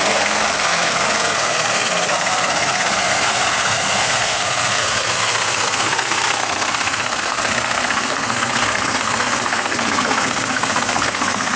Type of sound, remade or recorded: remade